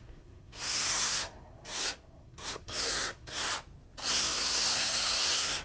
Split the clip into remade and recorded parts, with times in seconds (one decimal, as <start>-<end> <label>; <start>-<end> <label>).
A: 0.0-3.5 remade; 3.5-4.1 recorded; 4.1-5.6 remade